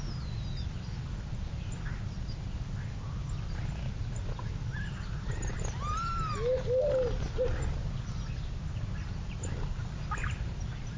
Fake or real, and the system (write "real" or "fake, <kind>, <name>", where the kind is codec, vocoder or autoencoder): real